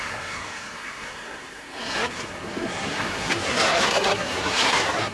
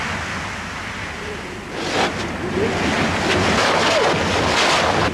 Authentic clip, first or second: second